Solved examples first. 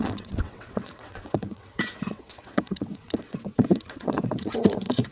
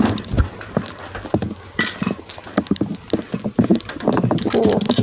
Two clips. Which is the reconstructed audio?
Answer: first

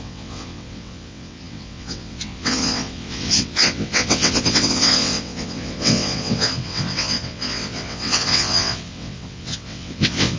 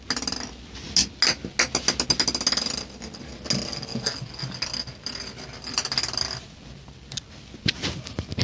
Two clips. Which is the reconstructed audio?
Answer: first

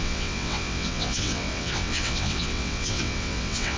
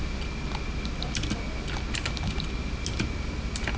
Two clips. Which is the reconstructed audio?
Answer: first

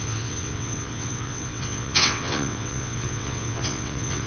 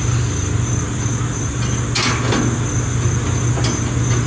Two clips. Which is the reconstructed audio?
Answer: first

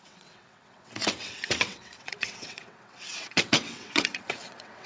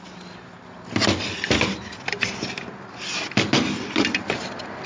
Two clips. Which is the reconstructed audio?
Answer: first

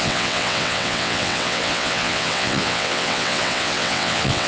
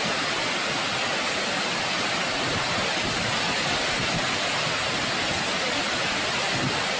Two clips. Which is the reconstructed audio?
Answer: first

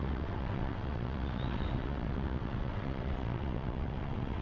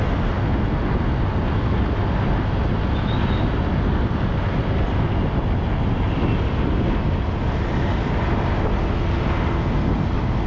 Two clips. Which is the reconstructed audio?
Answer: first